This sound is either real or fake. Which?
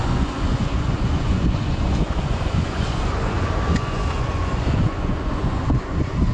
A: fake